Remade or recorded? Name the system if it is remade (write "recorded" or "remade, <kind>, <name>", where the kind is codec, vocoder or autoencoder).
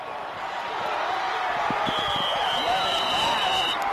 remade, vocoder, BigVGAN v2